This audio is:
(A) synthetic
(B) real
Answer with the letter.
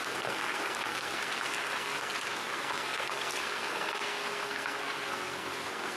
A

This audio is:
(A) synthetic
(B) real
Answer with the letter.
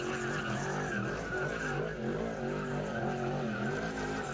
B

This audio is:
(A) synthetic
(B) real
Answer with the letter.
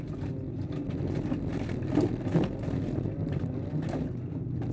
B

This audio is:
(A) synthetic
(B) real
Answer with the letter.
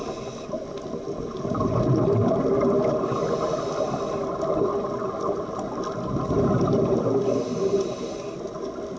B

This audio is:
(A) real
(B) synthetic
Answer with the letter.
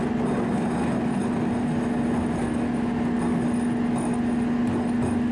A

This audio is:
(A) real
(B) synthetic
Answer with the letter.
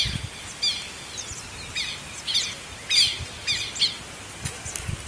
A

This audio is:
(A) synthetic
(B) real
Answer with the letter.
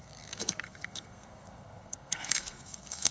A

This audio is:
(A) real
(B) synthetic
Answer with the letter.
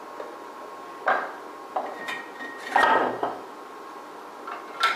A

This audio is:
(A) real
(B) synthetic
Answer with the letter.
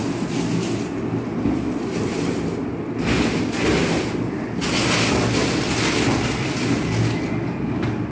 A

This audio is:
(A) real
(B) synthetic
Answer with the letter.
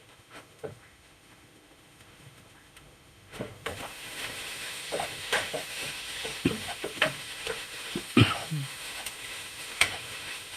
B